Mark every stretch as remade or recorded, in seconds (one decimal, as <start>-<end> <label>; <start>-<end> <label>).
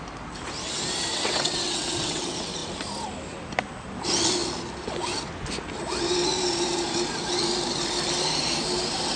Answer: 0.0-1.1 recorded; 1.1-2.2 remade; 2.2-9.2 recorded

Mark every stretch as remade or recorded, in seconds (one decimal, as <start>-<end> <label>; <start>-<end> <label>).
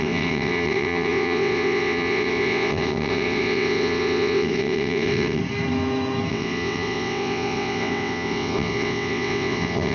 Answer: 0.0-5.4 remade; 5.4-6.3 recorded; 6.3-9.9 remade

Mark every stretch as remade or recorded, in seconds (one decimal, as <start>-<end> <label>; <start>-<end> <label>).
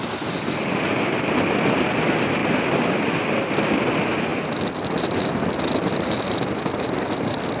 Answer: 0.0-7.6 recorded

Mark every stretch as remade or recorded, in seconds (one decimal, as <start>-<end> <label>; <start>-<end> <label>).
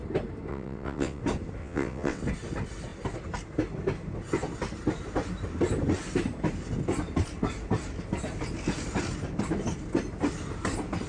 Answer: 0.0-0.5 recorded; 0.5-1.2 remade; 1.2-1.6 recorded; 1.6-2.2 remade; 2.2-11.1 recorded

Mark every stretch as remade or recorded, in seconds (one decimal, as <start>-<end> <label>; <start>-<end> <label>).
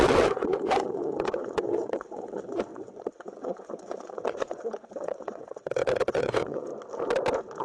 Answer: 0.0-6.7 remade; 6.7-7.6 recorded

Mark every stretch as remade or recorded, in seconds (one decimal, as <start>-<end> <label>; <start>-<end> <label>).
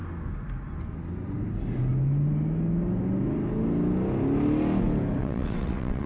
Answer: 0.0-5.2 recorded; 5.2-6.1 remade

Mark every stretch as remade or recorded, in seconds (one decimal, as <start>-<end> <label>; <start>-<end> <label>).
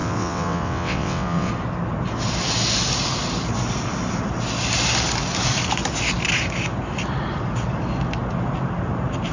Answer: 0.0-1.5 remade; 1.5-9.3 recorded